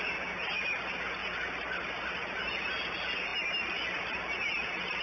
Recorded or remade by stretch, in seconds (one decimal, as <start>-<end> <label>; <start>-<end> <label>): 0.0-5.0 recorded